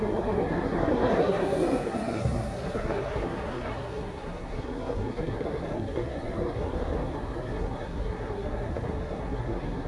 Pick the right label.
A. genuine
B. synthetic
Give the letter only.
B